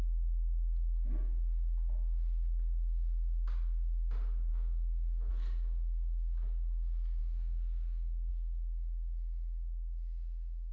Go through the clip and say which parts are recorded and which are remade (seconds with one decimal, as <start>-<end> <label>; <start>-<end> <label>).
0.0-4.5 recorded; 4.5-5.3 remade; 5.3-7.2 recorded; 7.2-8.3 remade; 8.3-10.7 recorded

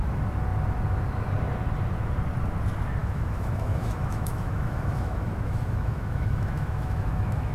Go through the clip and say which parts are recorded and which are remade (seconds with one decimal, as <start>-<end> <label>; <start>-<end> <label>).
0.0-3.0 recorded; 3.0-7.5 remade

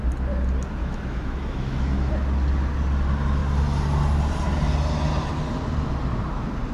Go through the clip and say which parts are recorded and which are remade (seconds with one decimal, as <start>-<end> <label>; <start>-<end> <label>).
0.0-0.8 recorded; 0.8-2.1 remade; 2.1-6.7 recorded

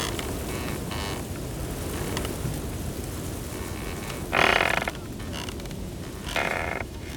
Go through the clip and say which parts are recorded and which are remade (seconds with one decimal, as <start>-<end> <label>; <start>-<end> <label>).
0.0-6.4 recorded; 6.4-7.2 remade

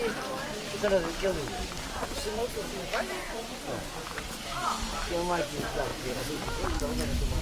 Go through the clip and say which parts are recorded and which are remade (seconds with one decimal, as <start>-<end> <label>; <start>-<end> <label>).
0.0-7.4 recorded

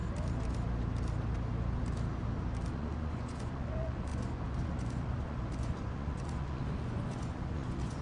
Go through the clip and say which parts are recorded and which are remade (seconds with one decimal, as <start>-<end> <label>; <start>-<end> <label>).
0.0-2.7 recorded; 2.7-8.0 remade

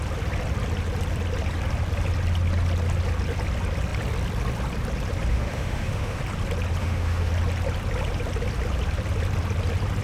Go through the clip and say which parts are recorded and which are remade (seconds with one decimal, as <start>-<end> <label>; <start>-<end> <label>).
0.0-5.3 recorded; 5.3-6.2 remade; 6.2-6.8 recorded; 6.8-7.3 remade; 7.3-10.0 recorded

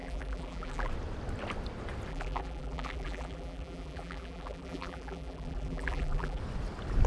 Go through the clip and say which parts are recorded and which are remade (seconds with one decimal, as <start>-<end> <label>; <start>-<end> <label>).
0.0-0.9 remade; 0.9-2.1 recorded; 2.1-6.4 remade; 6.4-7.1 recorded